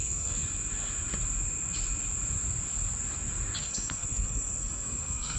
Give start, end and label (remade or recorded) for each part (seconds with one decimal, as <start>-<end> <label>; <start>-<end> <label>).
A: 0.0-0.4 remade; 0.4-3.6 recorded; 3.6-5.4 remade